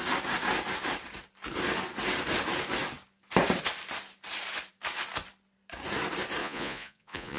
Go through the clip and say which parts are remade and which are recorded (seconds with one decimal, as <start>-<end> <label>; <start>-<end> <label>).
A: 0.0-6.4 recorded; 6.4-7.4 remade